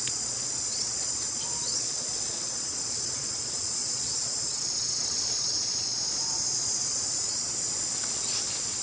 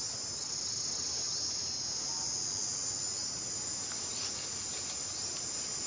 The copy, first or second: first